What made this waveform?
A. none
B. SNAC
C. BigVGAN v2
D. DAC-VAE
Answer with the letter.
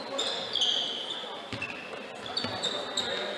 A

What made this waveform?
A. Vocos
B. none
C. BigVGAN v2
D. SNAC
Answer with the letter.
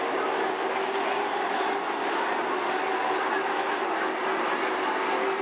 B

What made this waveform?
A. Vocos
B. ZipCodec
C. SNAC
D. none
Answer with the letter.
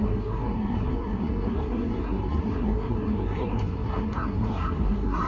C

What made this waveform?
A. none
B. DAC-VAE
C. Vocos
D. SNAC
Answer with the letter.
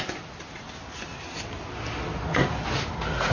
A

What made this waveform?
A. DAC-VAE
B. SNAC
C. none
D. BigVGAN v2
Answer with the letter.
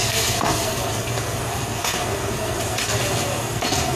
B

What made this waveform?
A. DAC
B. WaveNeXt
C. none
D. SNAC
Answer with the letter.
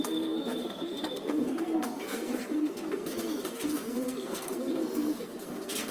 D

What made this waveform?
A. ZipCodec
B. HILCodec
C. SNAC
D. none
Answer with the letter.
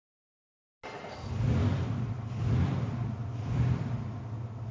D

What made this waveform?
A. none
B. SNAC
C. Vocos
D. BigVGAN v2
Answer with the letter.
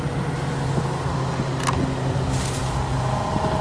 A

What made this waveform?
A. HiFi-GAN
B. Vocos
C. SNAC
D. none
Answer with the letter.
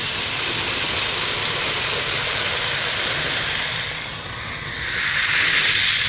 D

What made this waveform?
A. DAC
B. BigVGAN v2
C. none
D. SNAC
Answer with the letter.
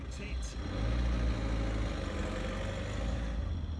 C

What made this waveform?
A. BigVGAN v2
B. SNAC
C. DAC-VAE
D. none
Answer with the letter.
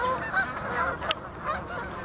D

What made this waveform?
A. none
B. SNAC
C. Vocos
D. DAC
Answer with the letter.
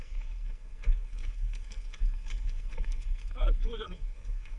B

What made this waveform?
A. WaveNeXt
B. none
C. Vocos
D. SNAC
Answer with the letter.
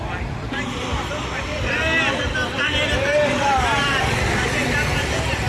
B